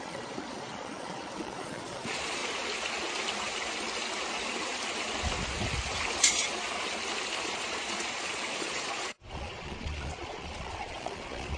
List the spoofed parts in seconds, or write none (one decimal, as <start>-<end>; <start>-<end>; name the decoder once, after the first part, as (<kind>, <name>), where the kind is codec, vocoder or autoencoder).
0.0-2.4 (vocoder, Vocos); 7.4-11.6